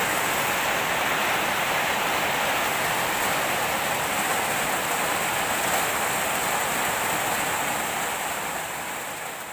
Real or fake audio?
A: real